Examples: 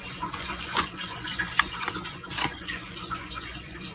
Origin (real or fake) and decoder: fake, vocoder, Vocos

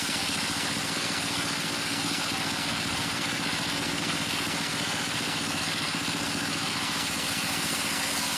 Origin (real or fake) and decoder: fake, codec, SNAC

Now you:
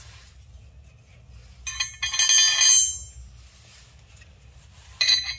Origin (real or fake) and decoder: real